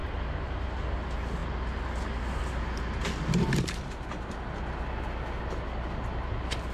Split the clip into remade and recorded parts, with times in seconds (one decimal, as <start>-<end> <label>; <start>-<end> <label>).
0.0-6.7 recorded